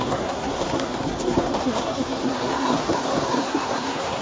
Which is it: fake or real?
fake